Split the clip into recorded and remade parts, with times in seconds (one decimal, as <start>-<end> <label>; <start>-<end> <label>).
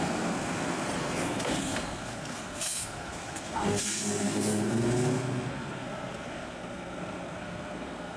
0.0-8.2 remade